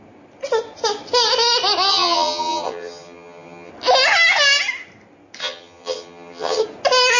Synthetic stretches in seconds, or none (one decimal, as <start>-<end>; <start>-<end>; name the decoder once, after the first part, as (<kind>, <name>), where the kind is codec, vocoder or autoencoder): 1.9-3.7 (vocoder, HiFi-GAN); 5.4-6.6